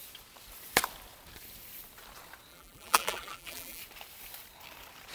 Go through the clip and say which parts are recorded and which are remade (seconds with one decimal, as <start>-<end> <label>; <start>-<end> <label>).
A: 0.0-2.5 recorded; 2.5-3.8 remade; 3.8-5.1 recorded